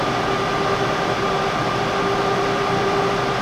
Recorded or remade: recorded